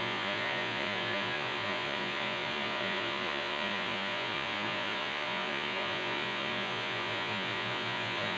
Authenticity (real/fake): fake